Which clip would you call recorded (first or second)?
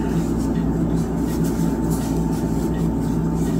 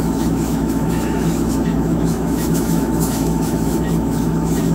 first